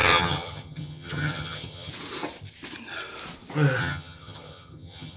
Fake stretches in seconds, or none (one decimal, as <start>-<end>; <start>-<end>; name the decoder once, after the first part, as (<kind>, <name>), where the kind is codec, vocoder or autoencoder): 0.0-1.9 (vocoder, HiFi-GAN); 3.8-5.2